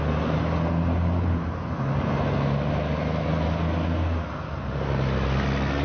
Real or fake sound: real